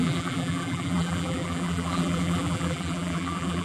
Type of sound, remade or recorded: remade